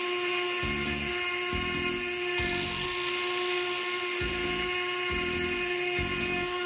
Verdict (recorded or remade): recorded